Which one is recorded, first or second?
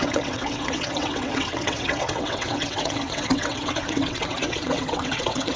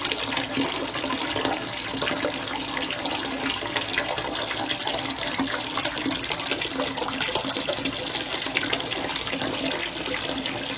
second